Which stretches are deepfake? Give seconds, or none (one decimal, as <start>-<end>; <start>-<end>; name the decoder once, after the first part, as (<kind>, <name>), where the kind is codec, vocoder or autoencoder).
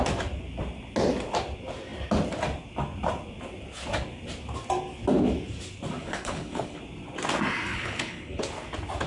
6.0-6.8 (codec, HILCodec); 7.7-8.4